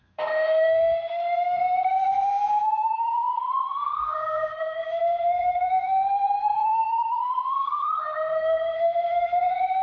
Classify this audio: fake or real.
fake